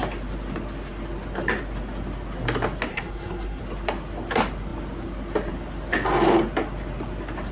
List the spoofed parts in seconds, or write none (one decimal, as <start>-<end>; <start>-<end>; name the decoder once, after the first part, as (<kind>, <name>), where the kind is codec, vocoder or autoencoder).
2.9-3.6 (codec, SNAC)